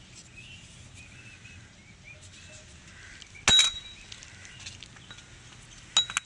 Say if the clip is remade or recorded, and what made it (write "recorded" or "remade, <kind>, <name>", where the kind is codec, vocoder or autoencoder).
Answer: recorded